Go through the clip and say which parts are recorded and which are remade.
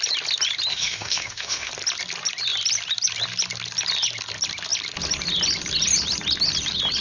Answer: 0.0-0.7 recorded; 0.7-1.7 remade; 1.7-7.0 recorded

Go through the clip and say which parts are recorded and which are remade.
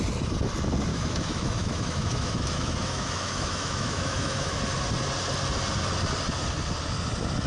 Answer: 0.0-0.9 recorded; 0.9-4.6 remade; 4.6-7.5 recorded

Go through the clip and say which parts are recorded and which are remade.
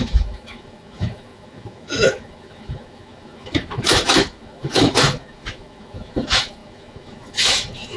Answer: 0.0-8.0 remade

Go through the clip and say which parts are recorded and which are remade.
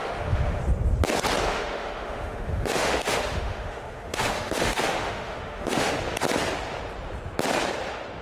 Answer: 0.0-0.6 remade; 0.6-1.5 recorded; 1.5-5.9 remade; 5.9-8.2 recorded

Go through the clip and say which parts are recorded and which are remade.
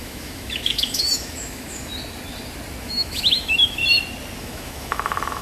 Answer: 0.0-1.9 remade; 1.9-2.8 recorded; 2.8-3.8 remade; 3.8-4.4 recorded; 4.4-5.4 remade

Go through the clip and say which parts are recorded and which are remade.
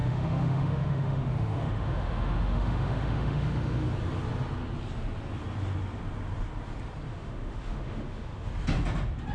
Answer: 0.0-3.9 remade; 3.9-7.1 recorded; 7.1-8.5 remade; 8.5-9.3 recorded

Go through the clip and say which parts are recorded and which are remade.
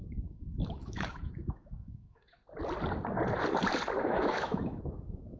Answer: 0.0-2.4 remade; 2.4-4.0 recorded; 4.0-5.4 remade